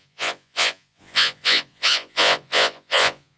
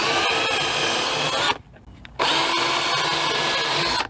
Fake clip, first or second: first